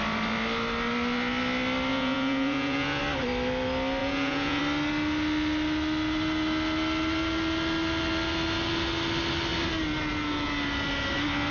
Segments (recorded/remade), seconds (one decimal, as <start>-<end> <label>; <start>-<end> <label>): 0.0-1.9 recorded; 1.9-3.0 remade; 3.0-4.0 recorded; 4.0-4.6 remade; 4.6-11.5 recorded